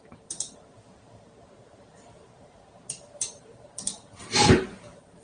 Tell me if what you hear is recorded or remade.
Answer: remade